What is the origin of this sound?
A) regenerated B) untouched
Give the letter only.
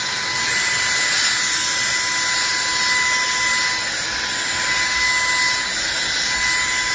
B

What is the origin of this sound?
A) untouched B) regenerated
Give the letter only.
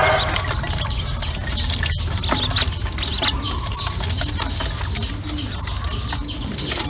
A